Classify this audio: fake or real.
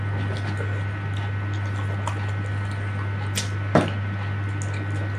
real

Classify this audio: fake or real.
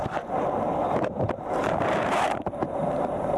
fake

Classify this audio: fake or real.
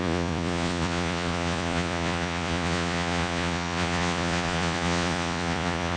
fake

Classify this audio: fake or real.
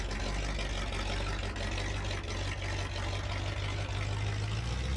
real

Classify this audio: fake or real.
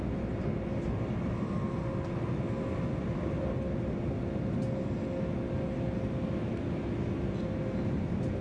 real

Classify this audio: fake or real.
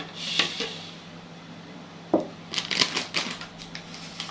real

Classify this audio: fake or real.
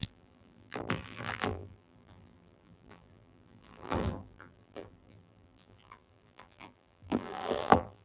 fake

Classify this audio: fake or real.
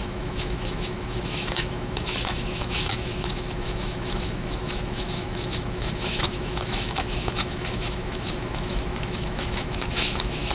fake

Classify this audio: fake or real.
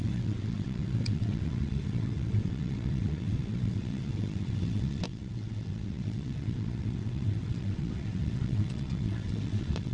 fake